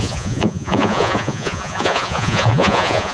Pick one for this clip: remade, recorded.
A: remade